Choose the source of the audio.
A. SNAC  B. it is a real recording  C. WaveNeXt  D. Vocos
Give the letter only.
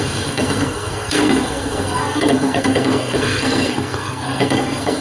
A